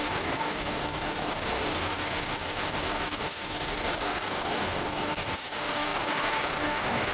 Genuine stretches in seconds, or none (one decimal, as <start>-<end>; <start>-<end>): none